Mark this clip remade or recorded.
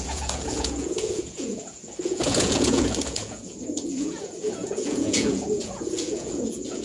remade